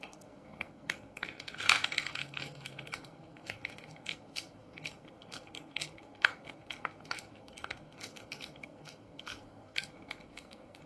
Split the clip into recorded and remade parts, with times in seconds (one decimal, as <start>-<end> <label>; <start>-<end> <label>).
0.0-10.9 remade